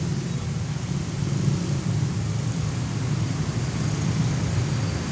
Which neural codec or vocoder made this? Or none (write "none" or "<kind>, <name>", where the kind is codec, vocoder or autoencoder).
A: none